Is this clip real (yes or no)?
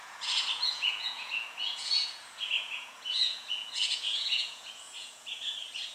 no